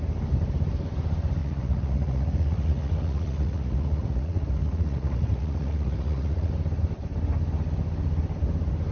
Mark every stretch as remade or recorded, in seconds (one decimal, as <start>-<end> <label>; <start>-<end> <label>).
0.0-1.4 recorded; 1.4-6.5 remade; 6.5-8.9 recorded